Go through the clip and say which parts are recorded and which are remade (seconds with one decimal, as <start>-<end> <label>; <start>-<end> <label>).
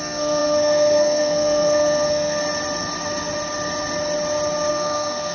0.0-2.4 remade; 2.4-4.7 recorded; 4.7-5.3 remade